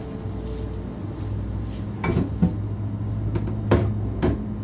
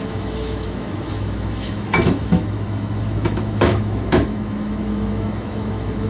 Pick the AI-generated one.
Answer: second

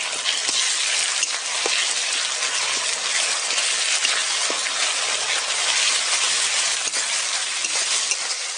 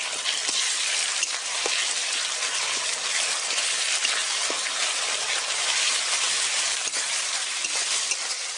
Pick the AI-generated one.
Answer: second